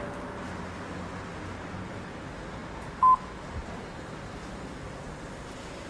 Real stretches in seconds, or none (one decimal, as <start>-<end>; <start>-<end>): 0.0-1.3; 2.2-3.6; 5.3-5.9